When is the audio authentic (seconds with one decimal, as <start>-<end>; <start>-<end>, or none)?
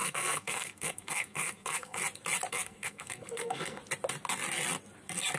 2.0-2.5; 3.8-5.4